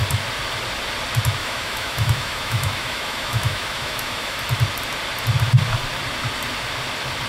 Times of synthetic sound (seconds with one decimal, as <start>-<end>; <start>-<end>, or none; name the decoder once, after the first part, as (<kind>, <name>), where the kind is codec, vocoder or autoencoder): 1.4-4.4 (autoencoder, DAC-VAE)